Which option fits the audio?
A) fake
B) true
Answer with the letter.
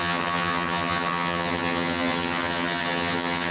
A